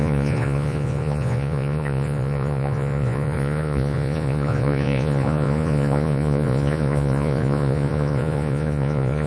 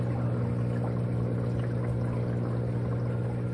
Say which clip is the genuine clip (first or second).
second